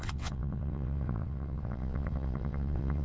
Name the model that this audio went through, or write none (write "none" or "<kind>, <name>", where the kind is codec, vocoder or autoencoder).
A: vocoder, WaveNeXt